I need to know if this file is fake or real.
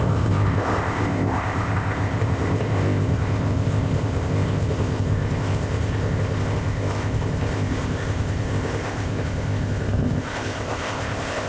fake